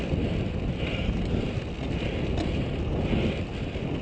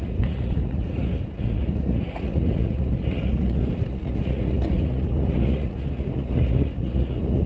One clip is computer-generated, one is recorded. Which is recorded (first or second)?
first